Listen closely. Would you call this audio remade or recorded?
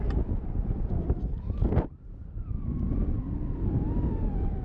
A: recorded